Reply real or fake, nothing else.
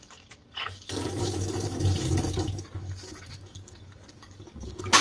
fake